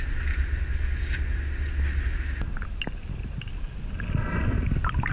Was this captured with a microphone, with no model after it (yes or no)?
yes